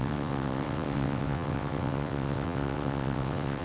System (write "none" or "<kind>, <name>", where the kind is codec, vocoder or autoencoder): vocoder, WaveNeXt